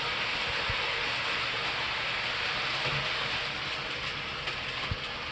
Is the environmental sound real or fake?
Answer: real